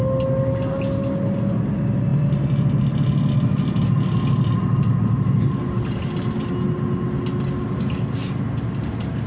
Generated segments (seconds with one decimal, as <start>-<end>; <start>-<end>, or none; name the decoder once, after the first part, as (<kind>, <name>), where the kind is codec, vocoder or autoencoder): 2.1-3.8 (vocoder, BigVGAN v2)